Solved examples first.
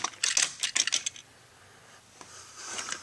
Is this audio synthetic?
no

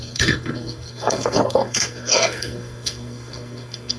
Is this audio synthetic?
yes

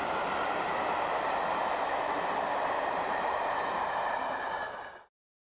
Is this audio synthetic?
no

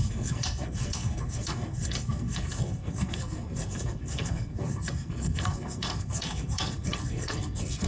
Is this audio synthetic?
yes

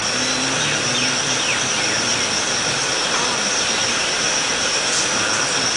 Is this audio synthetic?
no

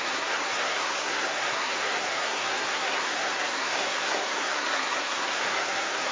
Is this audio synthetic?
yes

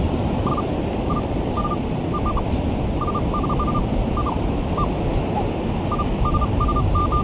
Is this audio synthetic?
no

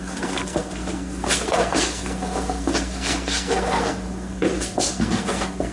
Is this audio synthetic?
yes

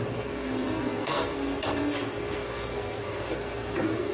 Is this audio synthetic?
yes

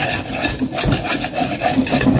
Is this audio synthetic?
no